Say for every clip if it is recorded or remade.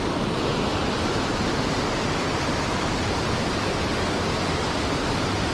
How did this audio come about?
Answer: recorded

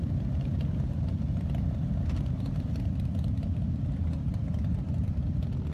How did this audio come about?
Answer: recorded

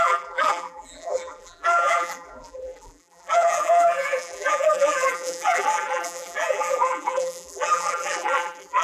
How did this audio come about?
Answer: remade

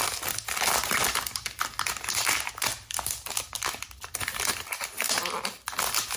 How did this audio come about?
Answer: recorded